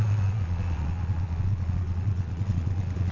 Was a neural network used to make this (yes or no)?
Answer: yes